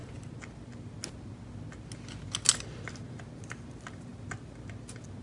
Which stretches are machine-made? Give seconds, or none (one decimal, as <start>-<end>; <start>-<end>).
none